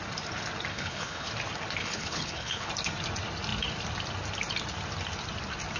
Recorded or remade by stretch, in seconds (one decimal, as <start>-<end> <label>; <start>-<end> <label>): 0.0-0.7 recorded; 0.7-1.3 remade; 1.3-1.8 recorded; 1.8-2.7 remade; 2.7-5.8 recorded